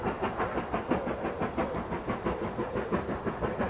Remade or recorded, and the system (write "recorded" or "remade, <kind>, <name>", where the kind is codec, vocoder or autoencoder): recorded